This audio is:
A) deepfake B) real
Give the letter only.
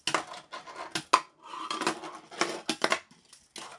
B